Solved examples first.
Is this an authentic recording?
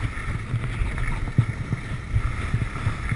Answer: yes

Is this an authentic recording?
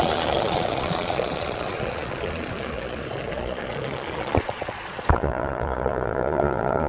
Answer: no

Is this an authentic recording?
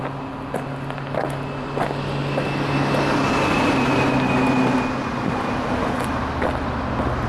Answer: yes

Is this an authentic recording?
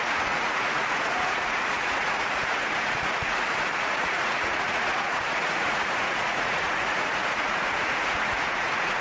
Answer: no